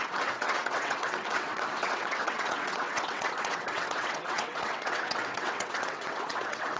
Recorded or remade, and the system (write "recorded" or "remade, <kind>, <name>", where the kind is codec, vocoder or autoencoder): remade, vocoder, WaveNeXt